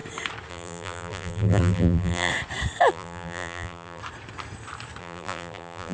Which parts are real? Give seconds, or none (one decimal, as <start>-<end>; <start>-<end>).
0.0-0.5; 2.3-2.9; 4.0-5.0